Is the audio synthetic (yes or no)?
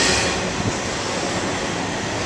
no